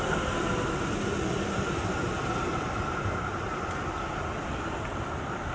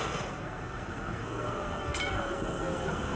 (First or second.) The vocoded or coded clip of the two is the second